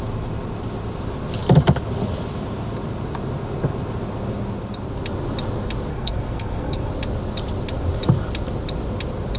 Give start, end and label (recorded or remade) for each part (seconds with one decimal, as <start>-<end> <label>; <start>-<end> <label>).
0.0-5.9 recorded; 5.9-6.9 remade; 6.9-9.4 recorded